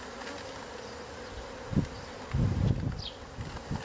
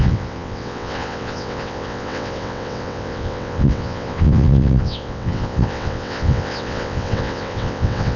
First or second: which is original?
first